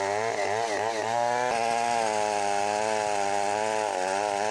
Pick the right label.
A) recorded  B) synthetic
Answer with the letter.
A